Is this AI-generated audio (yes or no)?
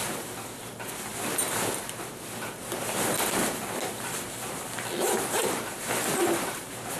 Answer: yes